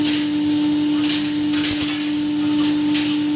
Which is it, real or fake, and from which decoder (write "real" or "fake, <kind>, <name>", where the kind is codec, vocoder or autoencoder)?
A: real